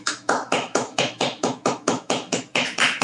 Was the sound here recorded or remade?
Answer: remade